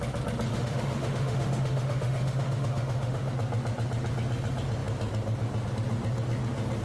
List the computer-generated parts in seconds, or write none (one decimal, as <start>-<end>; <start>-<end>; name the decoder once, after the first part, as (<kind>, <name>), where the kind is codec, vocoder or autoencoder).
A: 0.5-3.3 (autoencoder, DAC-VAE)